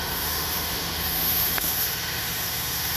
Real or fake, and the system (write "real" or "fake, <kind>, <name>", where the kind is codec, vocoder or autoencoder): fake, autoencoder, DAC-VAE